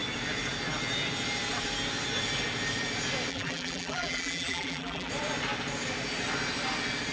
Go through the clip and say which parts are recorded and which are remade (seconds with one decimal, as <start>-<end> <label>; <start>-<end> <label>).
0.0-3.3 recorded; 3.3-5.1 remade; 5.1-7.1 recorded